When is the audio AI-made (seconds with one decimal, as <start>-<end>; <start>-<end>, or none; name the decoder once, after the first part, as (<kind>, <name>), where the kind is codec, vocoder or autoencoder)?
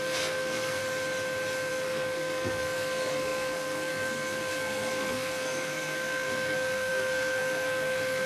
0.0-0.8 (codec, SNAC); 1.7-8.3